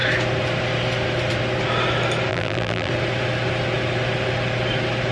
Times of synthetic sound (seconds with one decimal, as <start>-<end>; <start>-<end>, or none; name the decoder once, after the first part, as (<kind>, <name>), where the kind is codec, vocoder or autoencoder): 2.3-2.9 (vocoder, BigVGAN v2)